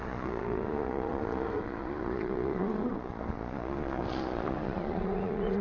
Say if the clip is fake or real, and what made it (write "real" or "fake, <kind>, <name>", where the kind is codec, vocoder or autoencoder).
fake, vocoder, Vocos